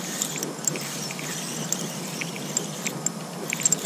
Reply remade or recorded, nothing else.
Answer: remade